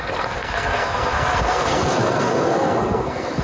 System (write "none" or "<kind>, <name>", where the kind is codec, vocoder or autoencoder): codec, SNAC